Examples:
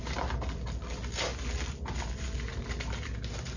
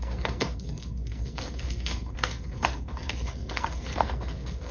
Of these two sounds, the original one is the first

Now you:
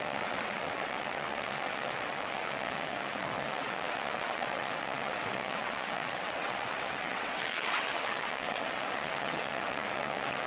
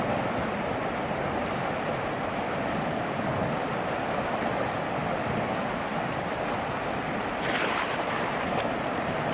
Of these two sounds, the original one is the second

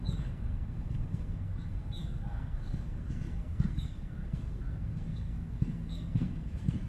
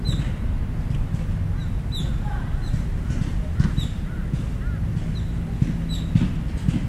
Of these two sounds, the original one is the second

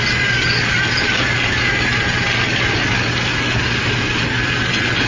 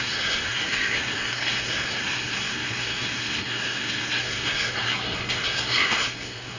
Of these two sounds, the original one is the first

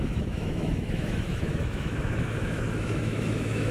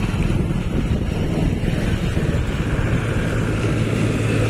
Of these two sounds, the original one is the second